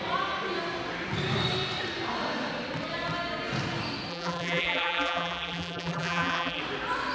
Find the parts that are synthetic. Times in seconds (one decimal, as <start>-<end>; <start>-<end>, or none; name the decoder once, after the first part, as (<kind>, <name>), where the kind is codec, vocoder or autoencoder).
4.1-6.6 (vocoder, BigVGAN v2)